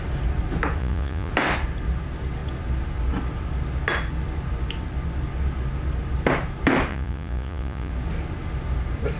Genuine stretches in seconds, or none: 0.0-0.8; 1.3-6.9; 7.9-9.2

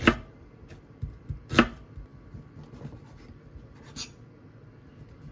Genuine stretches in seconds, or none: 0.0-5.3

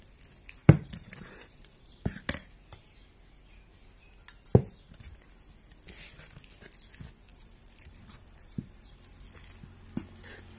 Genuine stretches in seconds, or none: 0.0-0.6; 2.1-7.3; 8.9-10.6